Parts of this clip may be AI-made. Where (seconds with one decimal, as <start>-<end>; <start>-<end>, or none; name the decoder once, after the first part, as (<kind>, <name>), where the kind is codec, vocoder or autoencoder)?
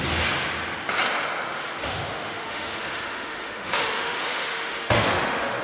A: 1.8-5.6 (autoencoder, DAC-VAE)